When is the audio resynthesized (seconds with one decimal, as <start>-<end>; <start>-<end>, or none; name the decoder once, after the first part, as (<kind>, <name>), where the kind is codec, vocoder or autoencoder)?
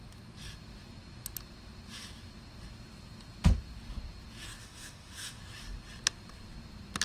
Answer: 4.6-5.4 (autoencoder, DAC-VAE)